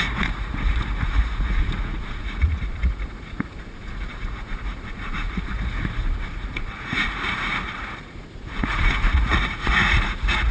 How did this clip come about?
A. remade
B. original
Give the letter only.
A